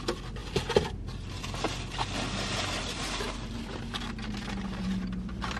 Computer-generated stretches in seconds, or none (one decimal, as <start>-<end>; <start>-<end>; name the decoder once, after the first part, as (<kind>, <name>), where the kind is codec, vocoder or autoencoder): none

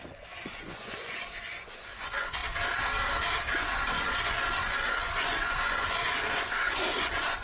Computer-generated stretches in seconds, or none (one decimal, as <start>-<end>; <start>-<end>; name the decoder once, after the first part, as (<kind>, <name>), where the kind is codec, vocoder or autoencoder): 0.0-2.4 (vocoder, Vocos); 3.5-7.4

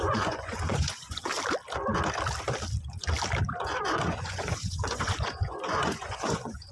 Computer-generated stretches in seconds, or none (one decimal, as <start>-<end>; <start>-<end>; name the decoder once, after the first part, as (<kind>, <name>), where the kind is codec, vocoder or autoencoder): 0.0-1.3 (vocoder, Vocos); 3.6-6.7

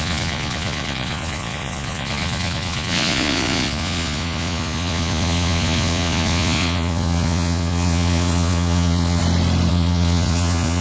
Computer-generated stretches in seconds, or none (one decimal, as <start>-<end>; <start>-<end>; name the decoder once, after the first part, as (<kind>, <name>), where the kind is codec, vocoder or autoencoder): 0.0-9.2 (vocoder, Vocos); 9.7-10.8

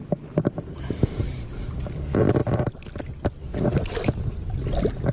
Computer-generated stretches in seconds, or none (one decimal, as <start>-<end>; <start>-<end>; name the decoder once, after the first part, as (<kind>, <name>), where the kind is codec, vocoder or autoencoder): none

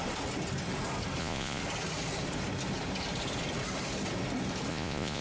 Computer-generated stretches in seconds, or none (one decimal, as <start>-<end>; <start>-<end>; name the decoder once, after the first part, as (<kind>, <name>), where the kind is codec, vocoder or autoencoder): 1.2-1.6 (vocoder, Vocos); 4.7-5.2

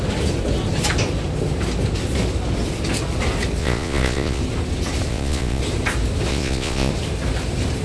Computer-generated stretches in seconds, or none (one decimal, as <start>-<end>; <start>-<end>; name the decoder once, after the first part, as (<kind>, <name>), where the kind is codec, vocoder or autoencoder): 3.6-4.4 (vocoder, Vocos); 5.1-5.6; 6.3-6.9

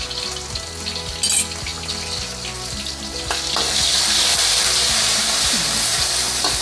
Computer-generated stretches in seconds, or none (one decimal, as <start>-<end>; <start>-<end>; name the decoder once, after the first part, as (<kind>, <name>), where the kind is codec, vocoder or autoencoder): none